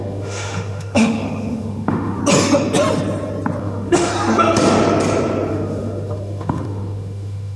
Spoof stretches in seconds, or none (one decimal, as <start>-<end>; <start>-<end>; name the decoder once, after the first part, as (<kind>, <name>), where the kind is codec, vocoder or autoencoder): 0.0-2.2 (autoencoder, DAC-VAE); 3.6-4.1; 5.5-7.6